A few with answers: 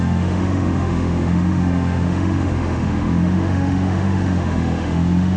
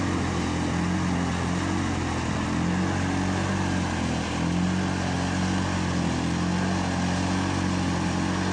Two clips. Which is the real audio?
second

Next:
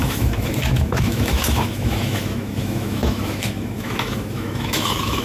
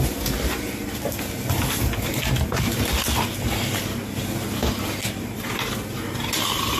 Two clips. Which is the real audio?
second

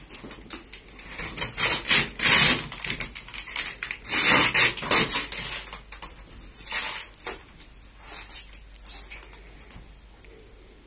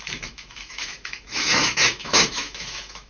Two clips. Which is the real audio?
first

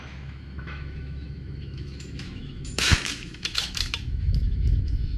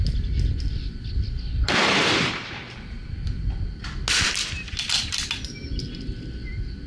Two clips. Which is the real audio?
second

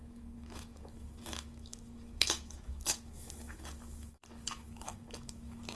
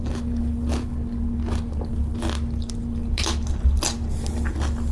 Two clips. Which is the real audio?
second